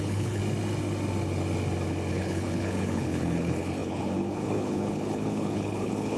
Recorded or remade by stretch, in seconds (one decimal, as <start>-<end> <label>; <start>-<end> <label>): 0.0-0.4 remade; 0.4-2.1 recorded; 2.1-6.2 remade